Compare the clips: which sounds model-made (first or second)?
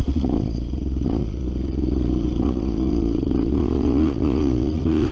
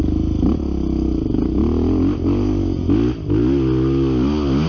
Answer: first